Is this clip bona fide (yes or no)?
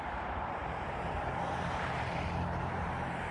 no